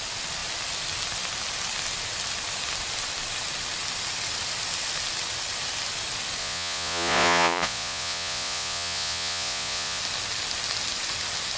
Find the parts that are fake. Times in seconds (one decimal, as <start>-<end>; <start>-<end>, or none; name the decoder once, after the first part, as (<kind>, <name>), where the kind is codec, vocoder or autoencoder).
6.4-10.0 (vocoder, Vocos)